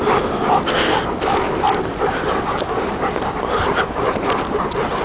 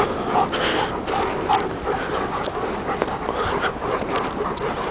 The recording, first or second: second